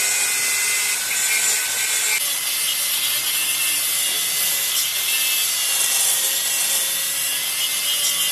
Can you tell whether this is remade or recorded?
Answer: recorded